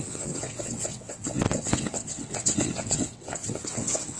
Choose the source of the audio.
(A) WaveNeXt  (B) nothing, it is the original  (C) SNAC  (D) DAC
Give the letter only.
A